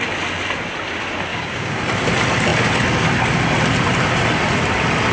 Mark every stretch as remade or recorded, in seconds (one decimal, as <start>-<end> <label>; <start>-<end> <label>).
0.0-1.3 recorded; 1.3-1.8 remade; 1.8-5.1 recorded